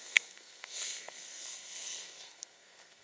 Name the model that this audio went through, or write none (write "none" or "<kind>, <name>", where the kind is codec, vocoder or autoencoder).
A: codec, SNAC